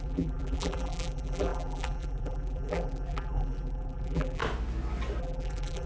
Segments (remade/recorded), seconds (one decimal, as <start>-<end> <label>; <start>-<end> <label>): 0.0-4.4 remade; 4.4-5.2 recorded; 5.2-5.9 remade